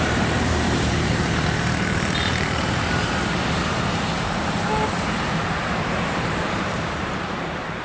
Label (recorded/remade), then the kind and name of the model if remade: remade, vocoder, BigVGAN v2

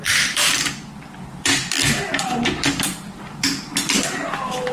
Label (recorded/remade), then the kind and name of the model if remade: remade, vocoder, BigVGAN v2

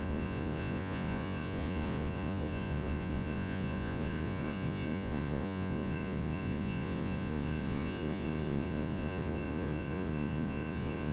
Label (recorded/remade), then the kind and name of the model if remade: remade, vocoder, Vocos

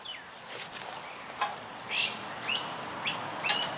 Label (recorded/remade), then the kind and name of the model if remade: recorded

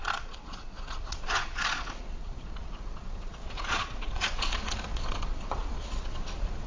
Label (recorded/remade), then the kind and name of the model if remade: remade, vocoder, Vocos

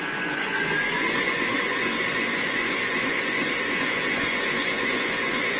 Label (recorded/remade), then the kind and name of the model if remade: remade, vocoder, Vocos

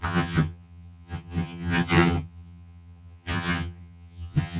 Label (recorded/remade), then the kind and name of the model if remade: remade, vocoder, HiFi-GAN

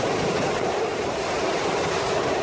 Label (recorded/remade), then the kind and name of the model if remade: recorded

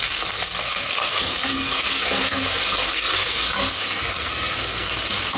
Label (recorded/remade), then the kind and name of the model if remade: remade, codec, SNAC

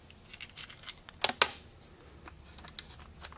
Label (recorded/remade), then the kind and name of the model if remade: recorded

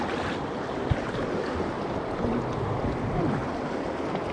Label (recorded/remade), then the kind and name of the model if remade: recorded